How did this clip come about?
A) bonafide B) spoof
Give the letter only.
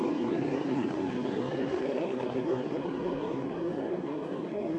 B